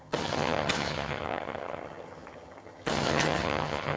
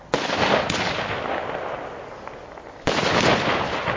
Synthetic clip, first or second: first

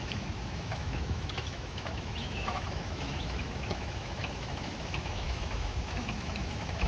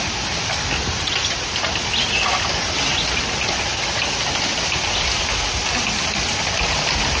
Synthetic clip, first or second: first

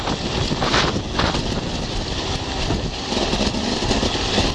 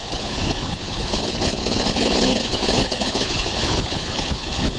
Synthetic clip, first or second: second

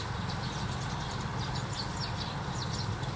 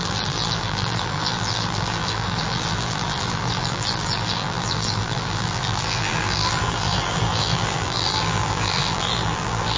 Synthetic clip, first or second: second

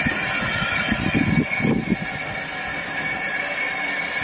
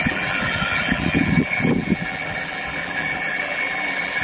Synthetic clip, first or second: second